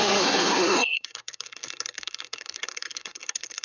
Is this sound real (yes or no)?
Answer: no